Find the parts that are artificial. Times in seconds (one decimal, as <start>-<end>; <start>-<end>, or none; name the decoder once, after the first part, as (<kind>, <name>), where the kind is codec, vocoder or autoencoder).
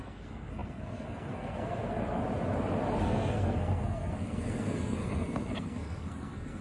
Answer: 0.0-2.2 (codec, SNAC); 3.0-6.6